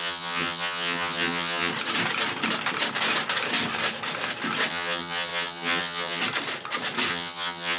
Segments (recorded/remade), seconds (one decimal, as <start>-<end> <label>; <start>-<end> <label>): 0.0-1.7 remade; 1.7-4.7 recorded; 4.7-6.2 remade; 6.2-7.1 recorded; 7.1-7.8 remade